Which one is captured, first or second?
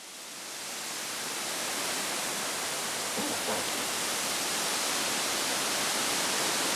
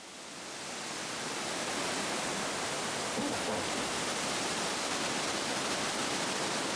second